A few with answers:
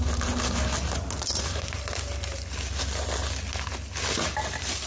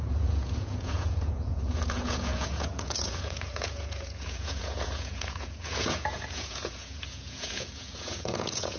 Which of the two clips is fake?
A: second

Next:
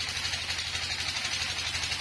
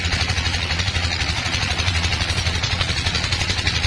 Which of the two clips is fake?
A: second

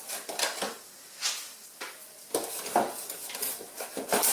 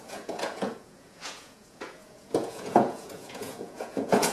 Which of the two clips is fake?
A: second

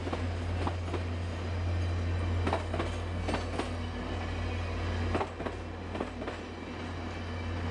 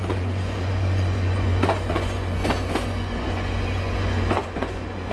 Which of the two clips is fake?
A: second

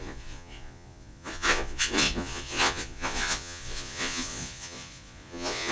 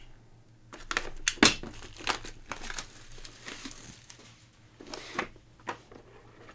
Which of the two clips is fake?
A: first